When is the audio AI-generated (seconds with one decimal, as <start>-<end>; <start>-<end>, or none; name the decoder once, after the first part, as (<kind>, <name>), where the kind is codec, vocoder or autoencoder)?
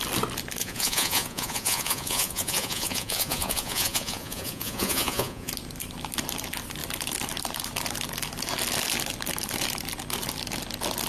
0.6-5.5 (vocoder, Vocos)